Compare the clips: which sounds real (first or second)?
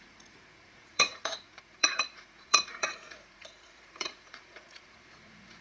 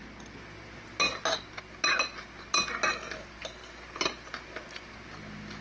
second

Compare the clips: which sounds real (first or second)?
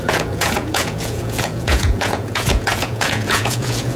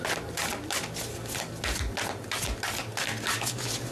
second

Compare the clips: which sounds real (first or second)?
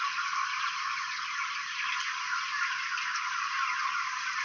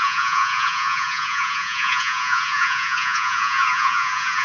first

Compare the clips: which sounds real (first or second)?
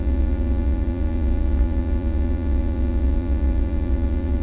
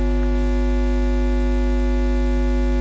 second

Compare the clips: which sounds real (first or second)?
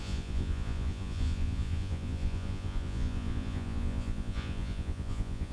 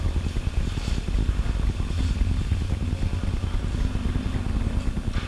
second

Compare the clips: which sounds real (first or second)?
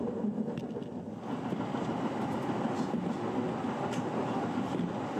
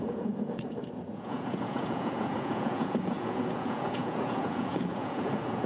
first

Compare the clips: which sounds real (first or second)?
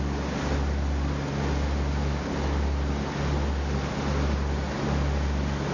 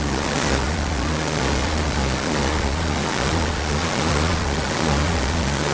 first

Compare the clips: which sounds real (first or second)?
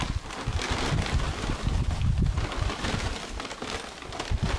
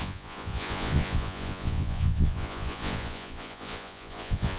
first